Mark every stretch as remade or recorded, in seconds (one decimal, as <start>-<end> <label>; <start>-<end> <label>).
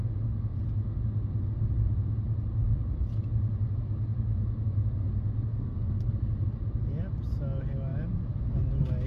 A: 0.0-5.5 recorded; 5.5-6.1 remade; 6.1-9.1 recorded